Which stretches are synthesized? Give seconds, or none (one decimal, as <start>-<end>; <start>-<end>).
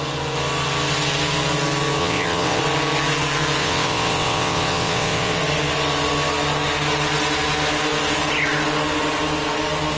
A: 2.0-2.6; 3.6-5.4